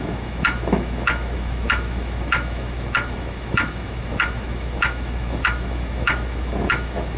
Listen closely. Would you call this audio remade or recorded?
remade